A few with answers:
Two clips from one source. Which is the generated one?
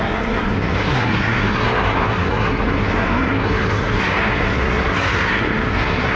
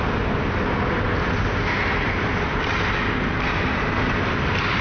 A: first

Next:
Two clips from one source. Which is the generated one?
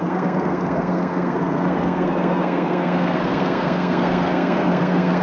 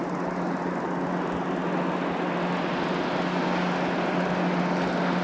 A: first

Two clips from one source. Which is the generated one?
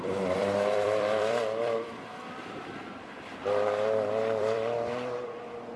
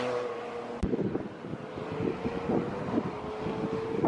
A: first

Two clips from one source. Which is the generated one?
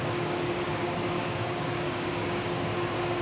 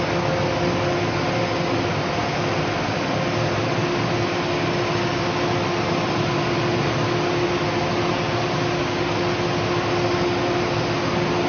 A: first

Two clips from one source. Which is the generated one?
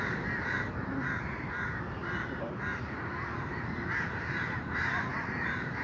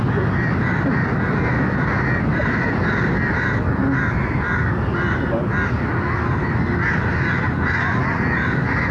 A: first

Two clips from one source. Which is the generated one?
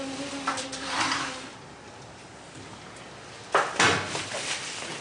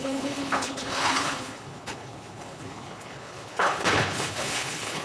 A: second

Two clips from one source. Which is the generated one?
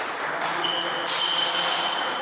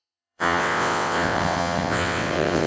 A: second